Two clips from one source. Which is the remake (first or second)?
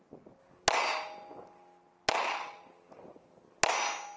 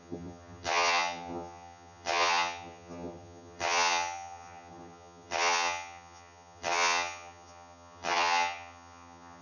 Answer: second